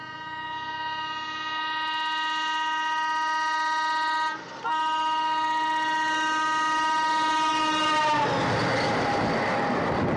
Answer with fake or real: real